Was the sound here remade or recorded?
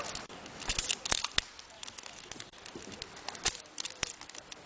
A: recorded